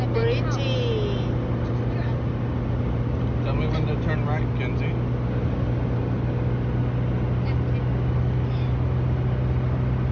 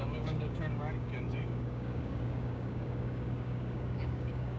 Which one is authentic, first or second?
first